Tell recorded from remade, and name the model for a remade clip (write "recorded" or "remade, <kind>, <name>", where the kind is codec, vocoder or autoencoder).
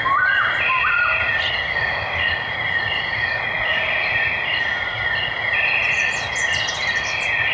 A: recorded